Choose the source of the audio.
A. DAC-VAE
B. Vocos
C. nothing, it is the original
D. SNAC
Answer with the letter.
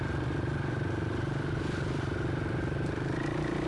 C